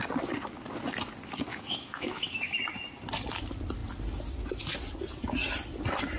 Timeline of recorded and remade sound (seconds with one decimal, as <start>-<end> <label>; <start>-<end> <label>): 0.0-1.5 recorded; 1.5-2.6 remade; 2.6-6.2 recorded